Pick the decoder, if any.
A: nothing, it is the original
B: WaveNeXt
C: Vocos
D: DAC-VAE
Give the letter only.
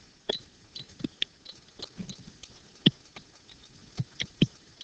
A